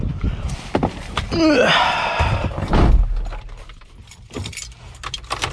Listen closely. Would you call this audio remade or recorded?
recorded